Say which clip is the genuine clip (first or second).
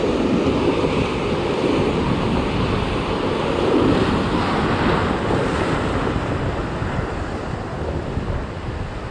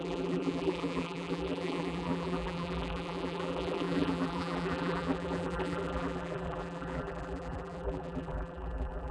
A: first